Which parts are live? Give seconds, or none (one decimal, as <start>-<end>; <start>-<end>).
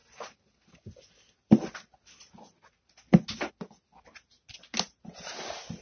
0.0-5.8